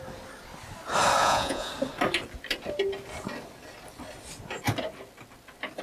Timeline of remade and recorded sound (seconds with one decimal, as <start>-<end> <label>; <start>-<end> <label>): 0.0-1.2 recorded; 1.2-1.7 remade; 1.7-5.8 recorded

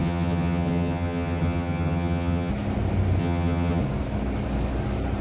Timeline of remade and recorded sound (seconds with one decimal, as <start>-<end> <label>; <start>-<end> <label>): 0.0-2.5 remade; 2.5-3.2 recorded; 3.2-3.8 remade; 3.8-5.2 recorded

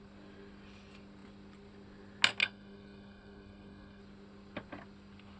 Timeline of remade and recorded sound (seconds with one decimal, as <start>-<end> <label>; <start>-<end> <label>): 0.0-2.4 recorded; 2.4-4.0 remade; 4.0-5.4 recorded

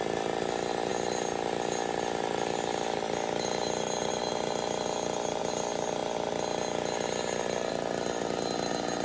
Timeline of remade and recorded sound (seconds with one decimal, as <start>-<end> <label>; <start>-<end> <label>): 0.0-9.0 recorded

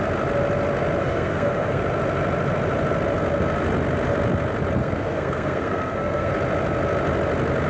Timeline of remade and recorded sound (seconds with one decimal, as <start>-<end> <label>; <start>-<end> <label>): 0.0-1.0 recorded; 1.0-1.8 remade; 1.8-4.8 recorded; 4.8-6.3 remade; 6.3-7.7 recorded

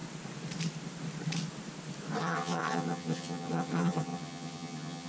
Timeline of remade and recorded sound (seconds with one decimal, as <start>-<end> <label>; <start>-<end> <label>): 0.0-2.2 recorded; 2.2-5.1 remade

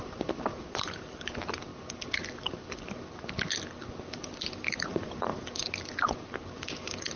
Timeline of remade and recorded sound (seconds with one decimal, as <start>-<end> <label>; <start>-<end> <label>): 0.0-1.7 remade; 1.7-4.1 recorded; 4.1-5.3 remade; 5.3-6.4 recorded; 6.4-7.2 remade